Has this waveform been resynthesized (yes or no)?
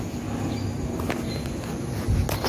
no